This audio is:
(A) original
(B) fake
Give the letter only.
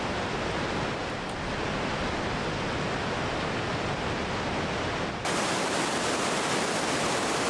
A